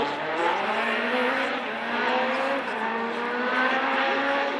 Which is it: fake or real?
real